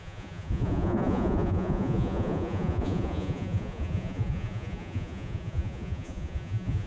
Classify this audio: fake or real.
fake